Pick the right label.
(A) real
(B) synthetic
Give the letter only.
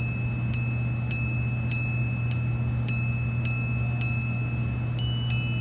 A